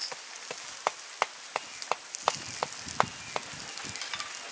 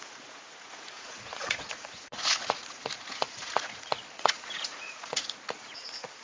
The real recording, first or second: first